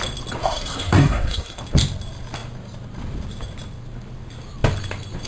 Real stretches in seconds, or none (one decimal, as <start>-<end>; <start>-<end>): 0.0-0.4; 1.6-5.3